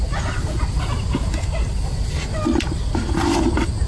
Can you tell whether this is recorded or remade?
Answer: recorded